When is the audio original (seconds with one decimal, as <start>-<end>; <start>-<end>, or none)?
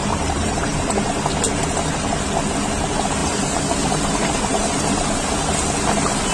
0.9-3.2; 4.9-6.3